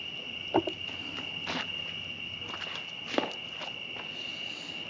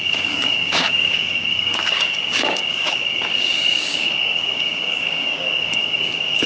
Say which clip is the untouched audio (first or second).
first